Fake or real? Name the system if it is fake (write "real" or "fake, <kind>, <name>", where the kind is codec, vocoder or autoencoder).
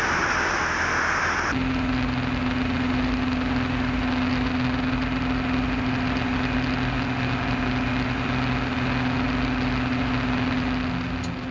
real